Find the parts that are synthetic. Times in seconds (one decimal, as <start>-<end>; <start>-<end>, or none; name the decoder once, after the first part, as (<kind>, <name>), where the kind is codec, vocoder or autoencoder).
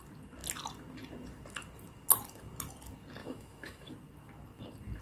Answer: 3.2-3.9 (autoencoder, DAC-VAE)